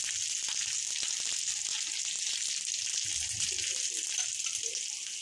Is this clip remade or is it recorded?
recorded